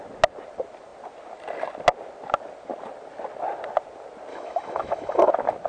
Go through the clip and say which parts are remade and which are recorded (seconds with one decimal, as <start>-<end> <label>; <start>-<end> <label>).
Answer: 0.0-4.3 recorded; 4.3-5.3 remade; 5.3-5.7 recorded